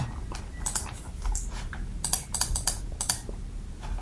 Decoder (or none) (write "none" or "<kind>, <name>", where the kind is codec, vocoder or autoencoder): none